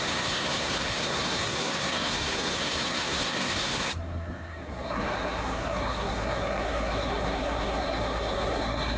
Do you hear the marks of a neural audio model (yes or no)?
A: yes